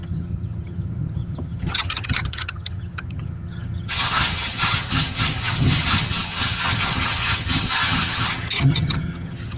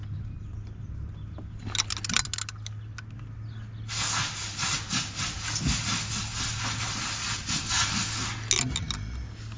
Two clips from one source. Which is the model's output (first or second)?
first